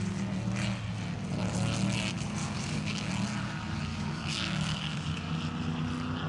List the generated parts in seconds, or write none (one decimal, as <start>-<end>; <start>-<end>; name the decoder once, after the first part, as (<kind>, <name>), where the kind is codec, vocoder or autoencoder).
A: 2.4-3.1 (codec, DAC); 3.9-5.3